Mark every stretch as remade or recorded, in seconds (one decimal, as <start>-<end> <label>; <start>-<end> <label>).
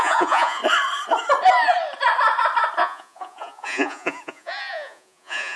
0.0-0.6 remade; 0.6-2.8 recorded; 2.8-5.6 remade